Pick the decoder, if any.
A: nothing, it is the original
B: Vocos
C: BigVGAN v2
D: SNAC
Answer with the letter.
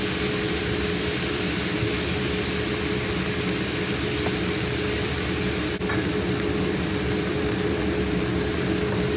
A